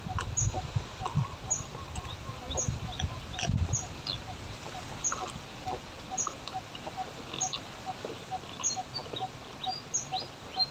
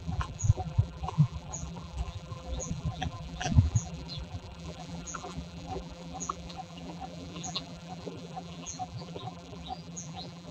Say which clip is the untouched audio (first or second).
first